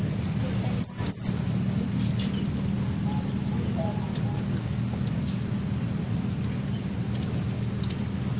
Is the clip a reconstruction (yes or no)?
no